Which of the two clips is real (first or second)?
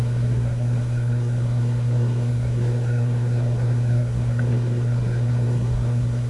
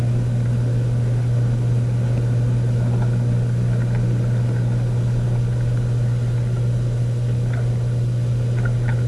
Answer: second